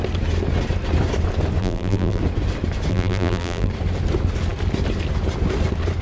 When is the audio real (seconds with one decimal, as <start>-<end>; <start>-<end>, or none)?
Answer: 0.0-1.6; 2.2-2.9; 3.7-6.0